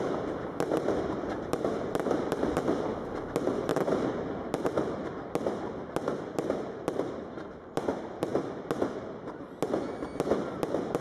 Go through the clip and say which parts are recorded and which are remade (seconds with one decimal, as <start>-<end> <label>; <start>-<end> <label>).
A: 0.0-11.0 recorded